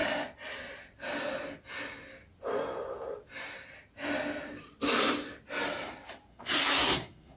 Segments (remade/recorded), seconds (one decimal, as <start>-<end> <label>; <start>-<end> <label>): 0.0-6.3 recorded; 6.3-7.4 remade